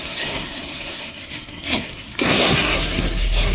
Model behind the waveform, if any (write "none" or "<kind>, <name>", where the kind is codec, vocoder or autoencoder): codec, SNAC